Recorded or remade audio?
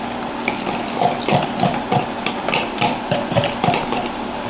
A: recorded